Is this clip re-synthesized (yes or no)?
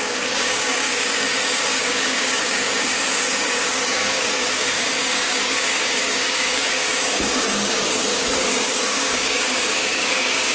yes